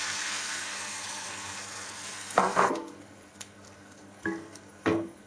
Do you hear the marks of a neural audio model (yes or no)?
yes